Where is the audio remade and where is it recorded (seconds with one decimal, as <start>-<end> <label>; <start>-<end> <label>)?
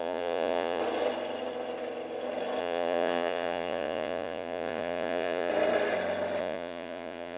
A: 0.0-0.8 remade; 0.8-2.6 recorded; 2.6-5.5 remade; 5.5-6.4 recorded; 6.4-7.4 remade